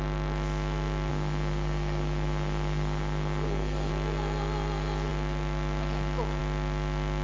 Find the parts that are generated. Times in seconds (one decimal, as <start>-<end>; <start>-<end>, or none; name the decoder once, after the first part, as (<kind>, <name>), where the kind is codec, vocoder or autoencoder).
1.1-3.9 (codec, SNAC)